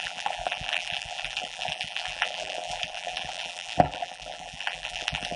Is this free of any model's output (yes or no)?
no